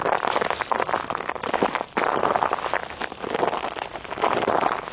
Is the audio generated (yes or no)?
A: no